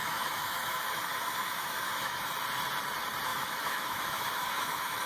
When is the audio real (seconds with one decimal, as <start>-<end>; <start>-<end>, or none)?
2.2-3.3